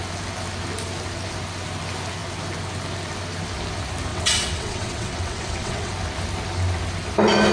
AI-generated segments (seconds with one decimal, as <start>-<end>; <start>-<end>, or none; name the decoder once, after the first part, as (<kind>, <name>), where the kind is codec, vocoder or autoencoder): 4.1-5.9 (vocoder, WaveNeXt)